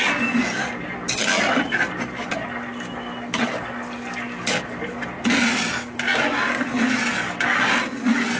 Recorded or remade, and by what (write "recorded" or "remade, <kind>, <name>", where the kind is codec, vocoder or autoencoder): recorded